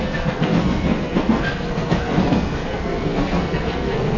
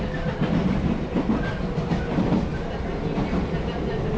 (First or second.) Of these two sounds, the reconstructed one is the first